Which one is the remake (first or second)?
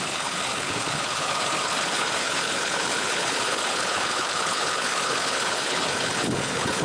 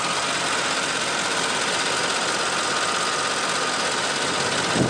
first